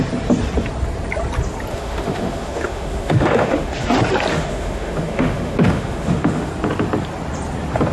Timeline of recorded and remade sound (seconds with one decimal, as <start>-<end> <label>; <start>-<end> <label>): 0.0-1.7 recorded; 1.7-3.9 remade; 3.9-4.3 recorded; 4.3-6.5 remade; 6.5-7.9 recorded

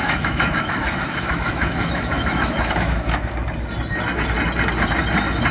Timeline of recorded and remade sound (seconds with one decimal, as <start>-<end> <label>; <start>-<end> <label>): 0.0-3.3 remade; 3.3-5.5 recorded